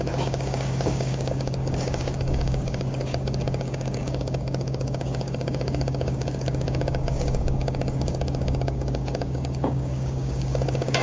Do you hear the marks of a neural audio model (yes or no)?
yes